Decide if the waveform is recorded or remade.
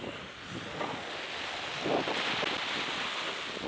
recorded